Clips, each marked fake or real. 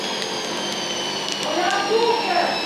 real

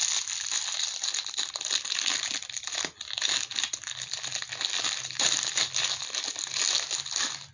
real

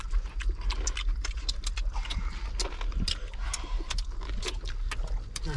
real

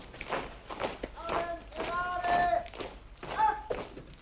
real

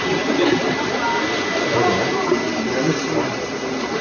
real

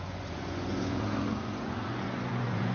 fake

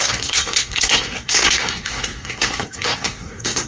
fake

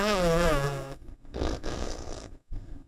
fake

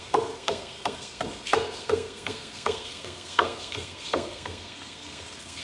fake